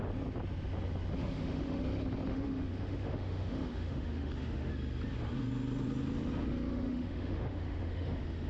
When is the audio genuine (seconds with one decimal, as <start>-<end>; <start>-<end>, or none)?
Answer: 0.0-1.2; 1.8-2.3; 4.7-6.7